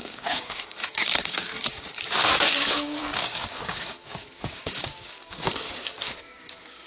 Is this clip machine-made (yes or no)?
yes